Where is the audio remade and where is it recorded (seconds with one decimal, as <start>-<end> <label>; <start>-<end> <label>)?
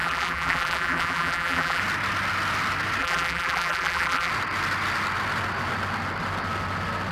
0.0-1.8 remade; 1.8-3.0 recorded; 3.0-4.3 remade; 4.3-7.1 recorded